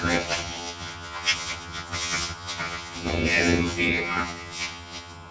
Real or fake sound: fake